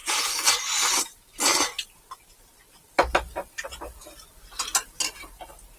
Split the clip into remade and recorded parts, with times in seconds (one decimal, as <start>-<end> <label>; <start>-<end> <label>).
0.0-0.6 remade; 0.6-1.5 recorded; 1.5-5.0 remade; 5.0-5.8 recorded